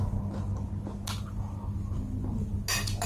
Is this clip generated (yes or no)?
no